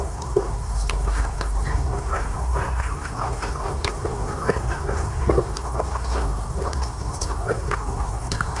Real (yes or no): no